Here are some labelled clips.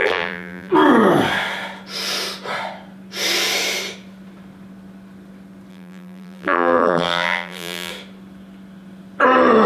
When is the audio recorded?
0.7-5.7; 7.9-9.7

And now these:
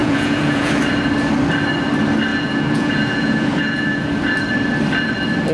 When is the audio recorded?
0.7-2.3; 4.1-5.5

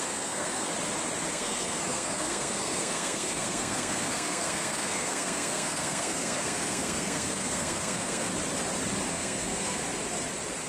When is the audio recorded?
0.7-1.3; 8.3-9.1; 9.8-10.7